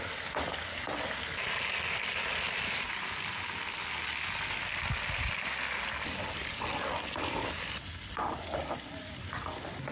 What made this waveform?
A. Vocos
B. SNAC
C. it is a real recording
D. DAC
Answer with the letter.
C